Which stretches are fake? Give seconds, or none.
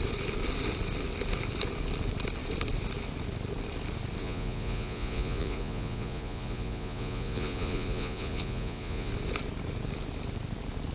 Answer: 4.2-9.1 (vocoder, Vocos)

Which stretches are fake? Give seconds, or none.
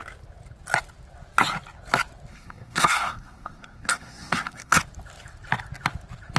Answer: 2.3-4.8 (codec, SNAC)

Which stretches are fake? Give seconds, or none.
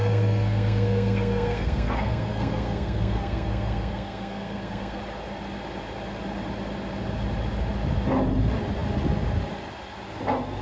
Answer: 0.0-5.0 (codec, SNAC)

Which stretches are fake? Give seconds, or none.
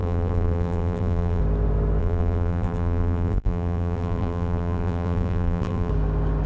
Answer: 0.0-1.4 (vocoder, BigVGAN v2); 2.0-5.9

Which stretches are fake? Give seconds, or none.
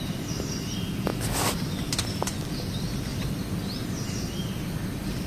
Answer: none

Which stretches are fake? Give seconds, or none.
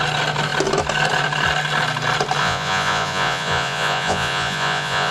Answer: 2.4-5.1 (vocoder, Vocos)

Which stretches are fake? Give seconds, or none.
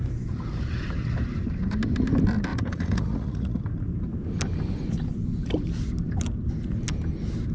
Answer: 2.5-3.6 (vocoder, Vocos)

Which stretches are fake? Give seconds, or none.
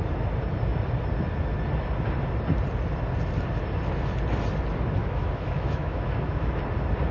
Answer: 5.0-6.6 (autoencoder, DAC-VAE)